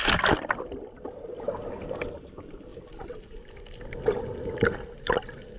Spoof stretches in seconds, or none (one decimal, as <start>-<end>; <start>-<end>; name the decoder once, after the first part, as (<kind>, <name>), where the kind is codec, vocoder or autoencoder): none